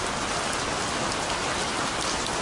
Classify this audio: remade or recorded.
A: recorded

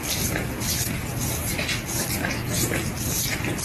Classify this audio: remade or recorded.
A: recorded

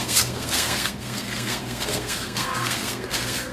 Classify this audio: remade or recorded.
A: remade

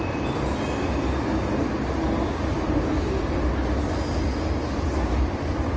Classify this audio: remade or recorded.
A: recorded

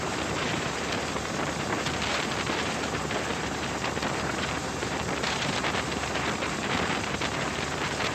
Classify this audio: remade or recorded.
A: remade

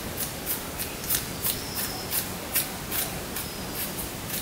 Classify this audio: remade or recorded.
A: recorded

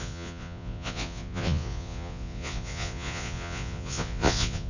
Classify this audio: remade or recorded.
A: remade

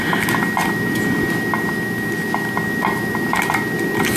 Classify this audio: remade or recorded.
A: recorded